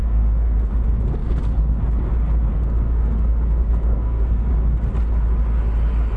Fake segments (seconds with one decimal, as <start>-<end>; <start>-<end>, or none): 0.0-0.7; 1.2-1.8; 2.5-4.5